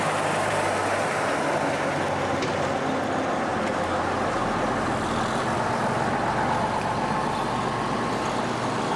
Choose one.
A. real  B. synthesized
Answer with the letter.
A